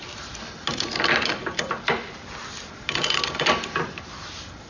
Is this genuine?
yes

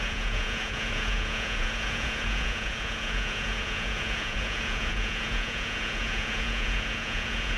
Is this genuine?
no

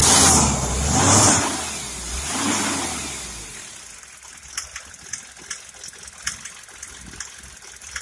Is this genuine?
yes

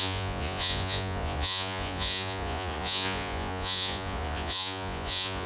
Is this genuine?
no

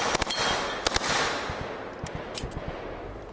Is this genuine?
yes